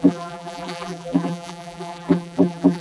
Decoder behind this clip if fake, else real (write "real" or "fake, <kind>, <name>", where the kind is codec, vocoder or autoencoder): fake, vocoder, BigVGAN v2